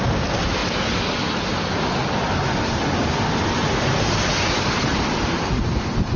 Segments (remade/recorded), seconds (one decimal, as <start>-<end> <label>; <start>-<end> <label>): 0.0-0.6 recorded; 0.6-4.3 remade; 4.3-4.9 recorded; 4.9-5.4 remade; 5.4-6.2 recorded